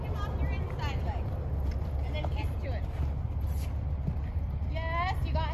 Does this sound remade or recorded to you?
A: recorded